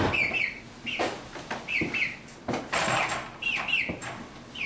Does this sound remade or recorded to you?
recorded